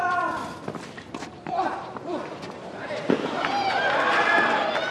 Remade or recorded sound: recorded